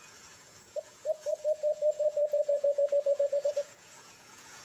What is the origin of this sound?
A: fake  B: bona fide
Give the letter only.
A